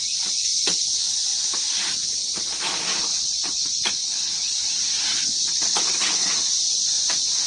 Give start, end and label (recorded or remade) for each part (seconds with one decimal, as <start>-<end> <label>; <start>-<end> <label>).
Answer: 0.0-3.1 recorded; 3.1-4.6 remade; 4.6-5.1 recorded; 5.1-6.3 remade; 6.3-7.5 recorded